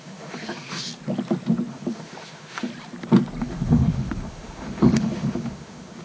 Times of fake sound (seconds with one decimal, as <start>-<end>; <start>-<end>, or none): 0.0-0.9; 1.7-2.7; 3.4-6.0

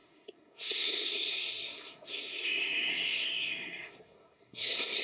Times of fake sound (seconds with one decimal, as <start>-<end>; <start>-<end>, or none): 0.0-5.0

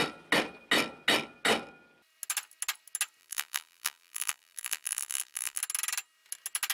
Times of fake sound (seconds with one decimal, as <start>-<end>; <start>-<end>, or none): 3.2-5.6

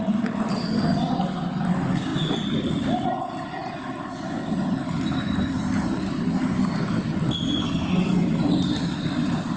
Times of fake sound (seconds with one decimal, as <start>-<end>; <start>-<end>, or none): none